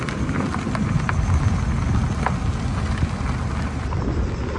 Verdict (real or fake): real